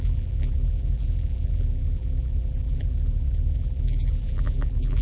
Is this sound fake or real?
fake